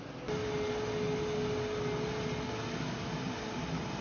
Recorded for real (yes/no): yes